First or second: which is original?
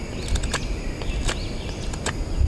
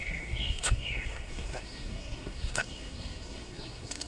first